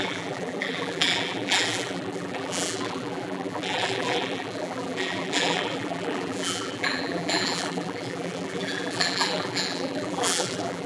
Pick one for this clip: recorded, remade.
remade